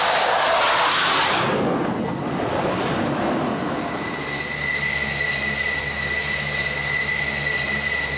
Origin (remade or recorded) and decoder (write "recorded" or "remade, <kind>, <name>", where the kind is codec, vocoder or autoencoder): recorded